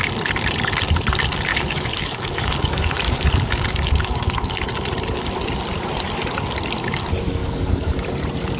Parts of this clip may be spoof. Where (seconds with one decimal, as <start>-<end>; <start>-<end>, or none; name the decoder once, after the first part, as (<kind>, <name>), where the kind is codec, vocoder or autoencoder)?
1.5-4.6 (codec, DAC); 7.4-8.1